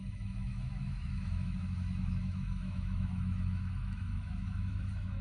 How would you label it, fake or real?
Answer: fake